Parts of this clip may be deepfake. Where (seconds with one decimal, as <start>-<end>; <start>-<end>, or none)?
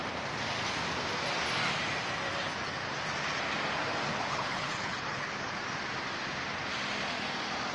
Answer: 4.1-5.6